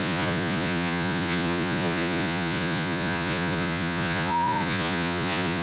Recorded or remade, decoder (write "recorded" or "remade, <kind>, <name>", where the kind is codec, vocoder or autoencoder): remade, vocoder, Vocos